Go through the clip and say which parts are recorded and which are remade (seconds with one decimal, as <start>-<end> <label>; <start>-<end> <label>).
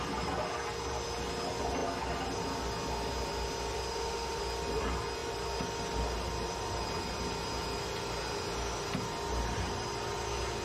0.0-3.9 recorded; 3.9-4.4 remade; 4.4-10.6 recorded